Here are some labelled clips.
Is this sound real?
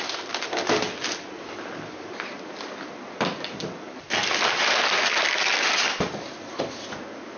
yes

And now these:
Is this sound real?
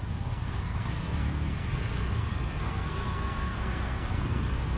no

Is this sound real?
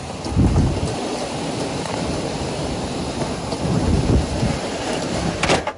yes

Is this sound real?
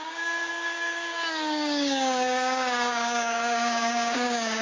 no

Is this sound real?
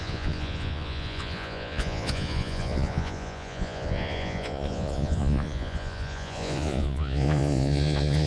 no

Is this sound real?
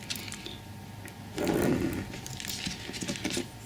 yes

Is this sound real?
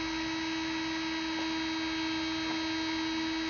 yes